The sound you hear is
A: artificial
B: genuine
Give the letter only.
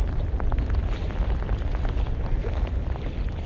A